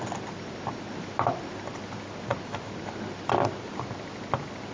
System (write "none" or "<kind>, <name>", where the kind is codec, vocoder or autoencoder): none